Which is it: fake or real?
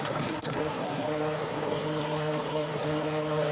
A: fake